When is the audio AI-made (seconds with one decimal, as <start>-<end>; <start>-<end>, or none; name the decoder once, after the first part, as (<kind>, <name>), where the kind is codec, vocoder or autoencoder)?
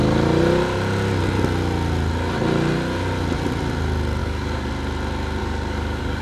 4.2-4.7 (codec, DAC); 5.4-6.2